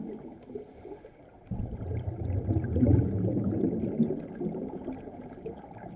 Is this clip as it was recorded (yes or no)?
yes